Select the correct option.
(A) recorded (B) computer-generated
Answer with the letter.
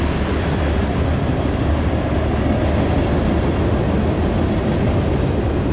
A